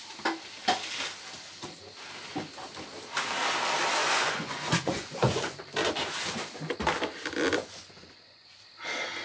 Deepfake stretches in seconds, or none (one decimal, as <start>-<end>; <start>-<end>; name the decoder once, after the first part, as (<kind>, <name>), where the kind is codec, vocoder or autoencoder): 4.0-5.6 (vocoder, Vocos); 7.6-8.6